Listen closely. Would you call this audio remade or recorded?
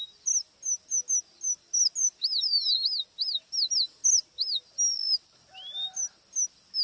recorded